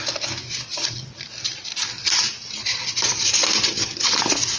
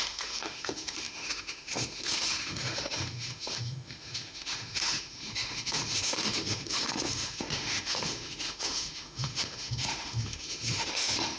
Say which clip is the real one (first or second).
first